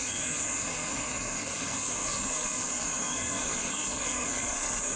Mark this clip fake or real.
fake